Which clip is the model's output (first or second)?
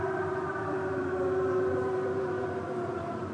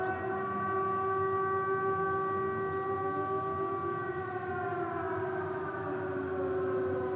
first